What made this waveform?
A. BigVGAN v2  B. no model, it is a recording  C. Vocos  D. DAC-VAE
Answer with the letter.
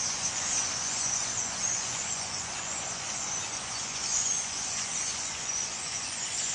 C